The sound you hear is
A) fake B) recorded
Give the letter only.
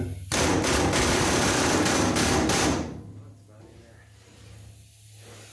B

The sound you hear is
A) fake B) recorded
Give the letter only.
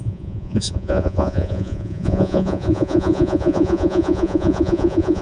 A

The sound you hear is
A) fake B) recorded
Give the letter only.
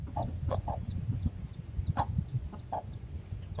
A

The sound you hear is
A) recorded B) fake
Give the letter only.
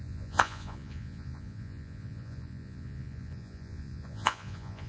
B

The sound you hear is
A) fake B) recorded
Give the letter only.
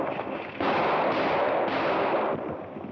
B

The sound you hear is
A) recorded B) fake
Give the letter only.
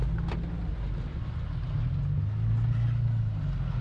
A